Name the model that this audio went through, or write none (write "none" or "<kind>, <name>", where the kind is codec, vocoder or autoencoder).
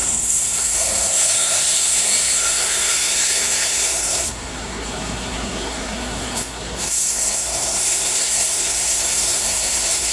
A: codec, SNAC